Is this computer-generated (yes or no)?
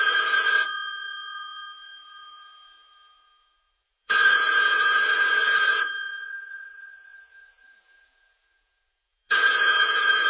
yes